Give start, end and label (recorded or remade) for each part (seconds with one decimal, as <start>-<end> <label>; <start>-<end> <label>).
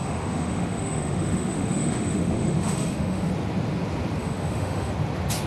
0.0-3.3 remade; 3.3-4.2 recorded; 4.2-4.9 remade; 4.9-5.5 recorded